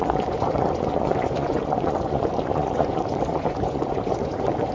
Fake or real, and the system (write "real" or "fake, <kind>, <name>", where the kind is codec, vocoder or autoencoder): fake, vocoder, Vocos